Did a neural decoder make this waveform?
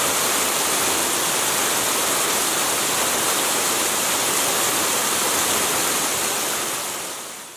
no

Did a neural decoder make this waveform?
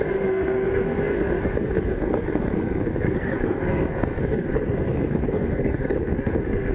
yes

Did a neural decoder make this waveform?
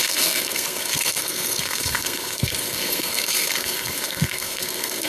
yes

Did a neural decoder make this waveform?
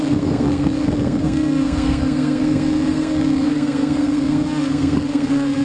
yes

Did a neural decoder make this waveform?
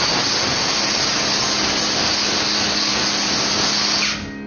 no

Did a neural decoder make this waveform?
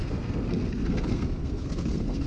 yes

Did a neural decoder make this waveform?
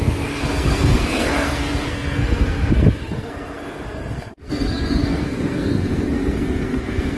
yes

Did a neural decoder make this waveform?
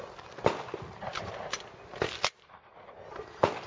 no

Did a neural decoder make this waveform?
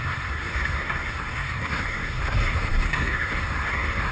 yes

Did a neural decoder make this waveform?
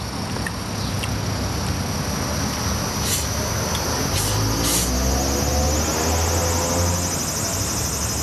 no